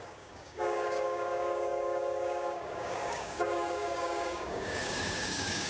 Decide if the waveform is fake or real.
fake